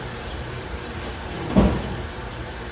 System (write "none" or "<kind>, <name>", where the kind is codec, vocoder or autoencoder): vocoder, BigVGAN v2